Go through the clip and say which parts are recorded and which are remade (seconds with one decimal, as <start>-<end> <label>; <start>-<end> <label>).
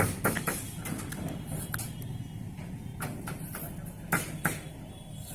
0.0-5.3 recorded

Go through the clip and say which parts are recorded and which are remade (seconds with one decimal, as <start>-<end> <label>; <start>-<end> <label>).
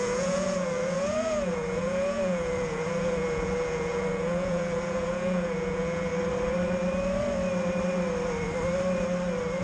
0.0-6.1 remade; 6.1-9.6 recorded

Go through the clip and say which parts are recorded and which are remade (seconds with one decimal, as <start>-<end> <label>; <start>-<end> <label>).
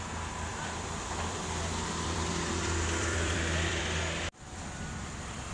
0.0-0.5 recorded; 0.5-3.8 remade; 3.8-5.5 recorded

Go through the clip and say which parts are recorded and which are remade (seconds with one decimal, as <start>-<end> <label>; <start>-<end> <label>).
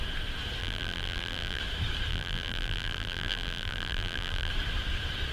0.0-0.6 recorded; 0.6-1.6 remade; 1.6-2.1 recorded; 2.1-4.5 remade; 4.5-5.3 recorded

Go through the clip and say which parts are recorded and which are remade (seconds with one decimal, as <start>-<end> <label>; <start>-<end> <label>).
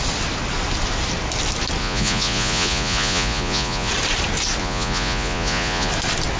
0.0-1.8 recorded; 1.8-3.9 remade; 3.9-4.6 recorded; 4.6-5.9 remade; 5.9-6.4 recorded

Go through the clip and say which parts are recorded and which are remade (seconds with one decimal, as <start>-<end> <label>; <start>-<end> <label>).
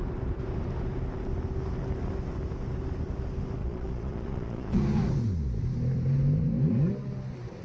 0.0-3.6 recorded; 3.6-4.8 remade; 4.8-7.6 recorded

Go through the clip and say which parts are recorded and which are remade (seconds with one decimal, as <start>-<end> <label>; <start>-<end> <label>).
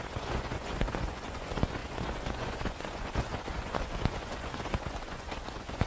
0.0-5.9 remade